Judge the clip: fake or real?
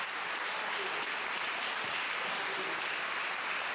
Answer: real